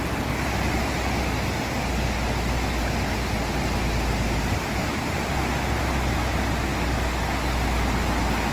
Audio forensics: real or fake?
real